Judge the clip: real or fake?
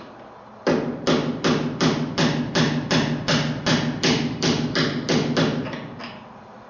real